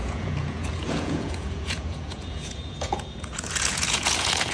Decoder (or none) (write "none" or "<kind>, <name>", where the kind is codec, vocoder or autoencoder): vocoder, Vocos